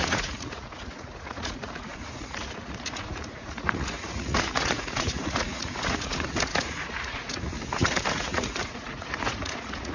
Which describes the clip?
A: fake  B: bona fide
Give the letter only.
A